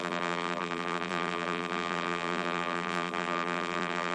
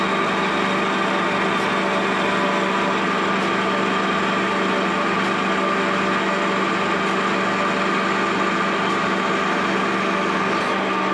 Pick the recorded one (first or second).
second